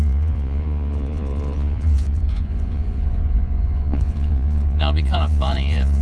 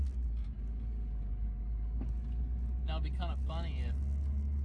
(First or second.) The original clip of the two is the second